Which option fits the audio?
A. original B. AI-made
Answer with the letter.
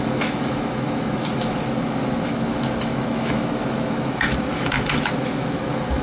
B